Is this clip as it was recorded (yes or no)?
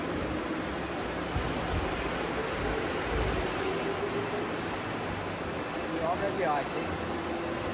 yes